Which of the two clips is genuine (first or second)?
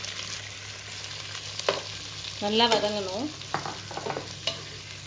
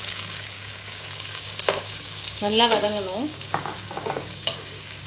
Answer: first